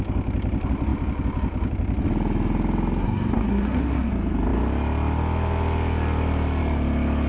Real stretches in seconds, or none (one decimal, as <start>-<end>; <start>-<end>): 0.0-3.0; 4.1-7.3